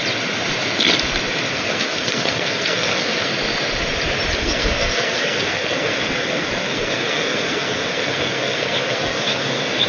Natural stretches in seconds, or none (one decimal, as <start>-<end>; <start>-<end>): 0.0-1.5; 3.3-4.4